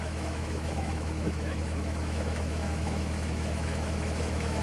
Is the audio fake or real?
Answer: fake